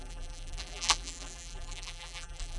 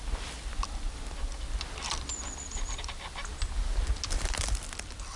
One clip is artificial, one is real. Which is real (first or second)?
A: second